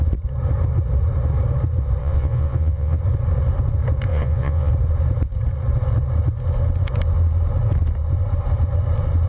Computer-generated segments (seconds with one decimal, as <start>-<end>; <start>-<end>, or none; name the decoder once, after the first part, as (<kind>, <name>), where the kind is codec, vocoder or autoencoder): 2.0-3.0 (vocoder, Vocos); 4.1-4.7